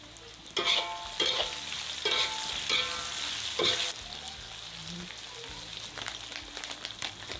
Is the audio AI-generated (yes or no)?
no